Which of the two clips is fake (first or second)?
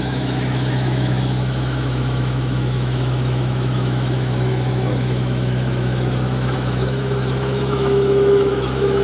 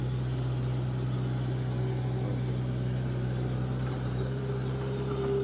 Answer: first